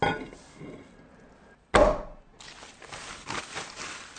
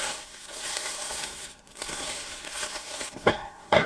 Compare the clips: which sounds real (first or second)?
first